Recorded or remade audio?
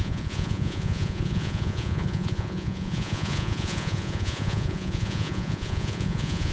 remade